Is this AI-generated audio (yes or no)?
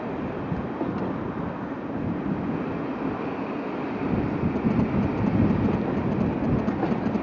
no